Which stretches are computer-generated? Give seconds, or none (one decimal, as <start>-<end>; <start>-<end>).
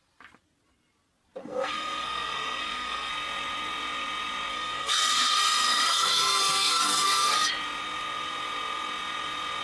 1.4-3.1; 4.5-7.5